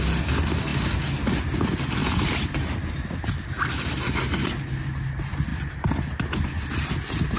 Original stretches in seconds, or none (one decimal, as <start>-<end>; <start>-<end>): 0.0-2.0; 4.1-7.4